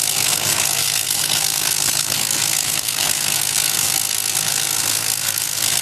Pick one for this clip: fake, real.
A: fake